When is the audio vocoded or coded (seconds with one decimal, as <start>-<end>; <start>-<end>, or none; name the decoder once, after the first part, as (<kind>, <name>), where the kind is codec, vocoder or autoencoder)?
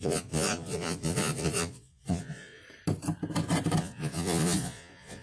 0.0-2.6 (vocoder, Vocos); 3.8-5.2